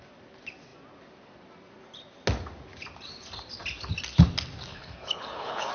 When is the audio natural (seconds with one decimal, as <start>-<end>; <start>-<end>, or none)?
0.0-4.7